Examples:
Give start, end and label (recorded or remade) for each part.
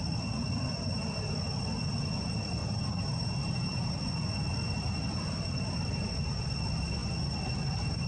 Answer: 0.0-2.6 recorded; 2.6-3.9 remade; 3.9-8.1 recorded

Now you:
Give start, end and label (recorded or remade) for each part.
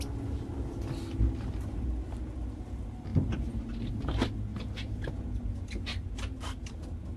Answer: 0.0-3.1 recorded; 3.1-3.9 remade; 3.9-4.5 recorded; 4.5-5.2 remade; 5.2-7.2 recorded